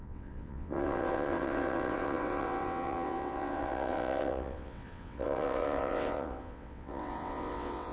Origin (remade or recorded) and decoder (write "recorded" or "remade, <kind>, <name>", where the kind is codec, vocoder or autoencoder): remade, vocoder, WaveNeXt